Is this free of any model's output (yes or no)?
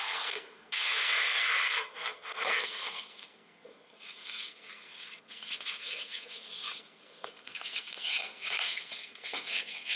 no